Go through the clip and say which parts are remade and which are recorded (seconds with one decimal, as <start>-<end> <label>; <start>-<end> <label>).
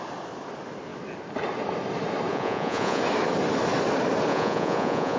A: 0.0-2.3 recorded; 2.3-3.0 remade; 3.0-4.3 recorded; 4.3-5.2 remade